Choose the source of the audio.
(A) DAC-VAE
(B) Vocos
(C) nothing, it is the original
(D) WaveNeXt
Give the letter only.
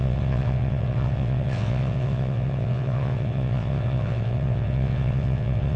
D